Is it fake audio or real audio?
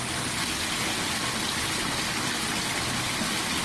real